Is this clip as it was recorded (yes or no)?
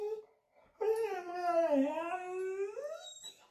yes